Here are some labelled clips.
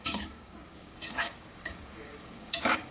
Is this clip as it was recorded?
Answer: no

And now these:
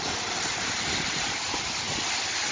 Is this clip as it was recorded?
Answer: yes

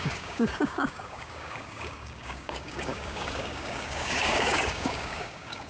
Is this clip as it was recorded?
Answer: no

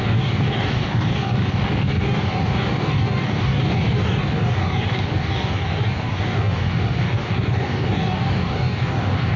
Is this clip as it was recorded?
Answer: no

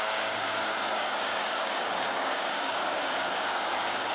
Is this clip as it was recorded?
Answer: no